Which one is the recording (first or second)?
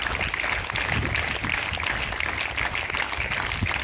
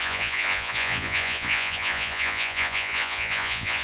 first